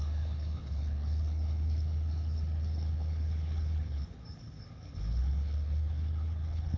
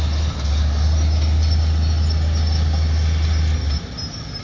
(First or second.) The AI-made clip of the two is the first